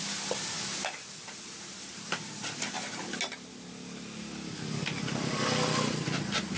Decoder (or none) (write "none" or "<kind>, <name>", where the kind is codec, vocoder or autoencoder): none